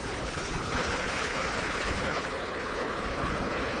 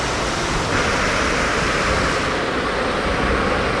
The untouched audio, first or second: second